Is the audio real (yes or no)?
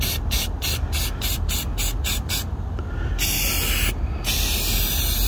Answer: yes